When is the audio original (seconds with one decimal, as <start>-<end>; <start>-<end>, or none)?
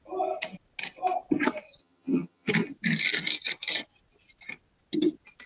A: 0.0-1.8; 2.5-5.5